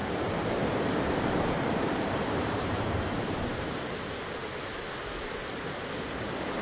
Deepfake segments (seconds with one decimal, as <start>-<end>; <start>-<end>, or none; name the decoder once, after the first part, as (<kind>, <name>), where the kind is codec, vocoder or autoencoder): 0.0-3.6 (vocoder, BigVGAN v2)